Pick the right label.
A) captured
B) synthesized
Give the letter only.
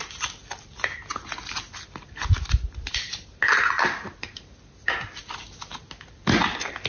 A